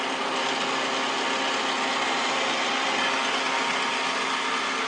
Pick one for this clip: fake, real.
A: real